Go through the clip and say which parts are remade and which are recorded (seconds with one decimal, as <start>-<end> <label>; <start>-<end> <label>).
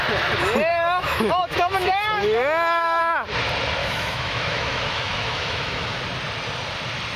0.0-0.7 recorded; 0.7-3.0 remade; 3.0-3.8 recorded; 3.8-6.0 remade; 6.0-7.2 recorded